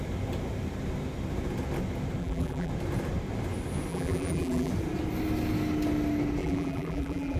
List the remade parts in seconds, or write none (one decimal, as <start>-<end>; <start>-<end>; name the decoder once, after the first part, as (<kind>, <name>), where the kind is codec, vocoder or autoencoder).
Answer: 2.2-2.7 (vocoder, BigVGAN v2); 3.9-4.7; 6.4-7.4